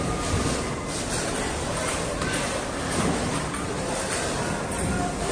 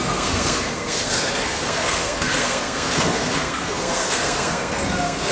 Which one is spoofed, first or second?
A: second